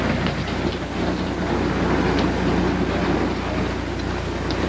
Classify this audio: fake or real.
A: real